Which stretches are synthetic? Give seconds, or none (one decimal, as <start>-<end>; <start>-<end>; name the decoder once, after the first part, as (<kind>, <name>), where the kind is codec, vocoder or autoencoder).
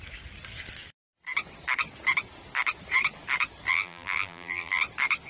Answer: 3.7-4.8 (vocoder, BigVGAN v2)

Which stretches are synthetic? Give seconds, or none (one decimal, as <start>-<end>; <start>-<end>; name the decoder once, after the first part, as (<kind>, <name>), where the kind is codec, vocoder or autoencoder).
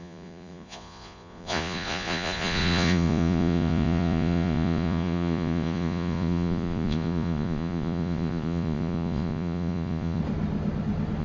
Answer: 0.0-10.2 (vocoder, Vocos)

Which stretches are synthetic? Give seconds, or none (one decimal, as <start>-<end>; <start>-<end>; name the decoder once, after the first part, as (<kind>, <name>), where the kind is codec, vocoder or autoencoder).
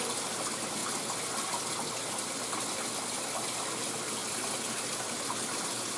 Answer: none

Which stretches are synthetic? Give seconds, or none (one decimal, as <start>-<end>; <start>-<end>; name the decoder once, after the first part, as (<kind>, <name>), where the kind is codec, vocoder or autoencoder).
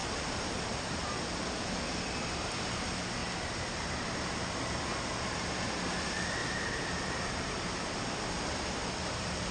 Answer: 0.0-1.7 (vocoder, BigVGAN v2); 3.2-4.6; 6.4-7.7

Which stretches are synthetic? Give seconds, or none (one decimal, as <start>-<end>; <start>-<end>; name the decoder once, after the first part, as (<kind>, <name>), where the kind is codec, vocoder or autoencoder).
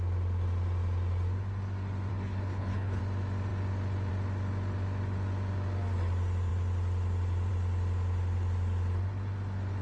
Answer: 2.1-3.0 (codec, HILCodec)